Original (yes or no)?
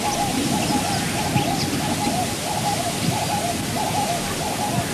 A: yes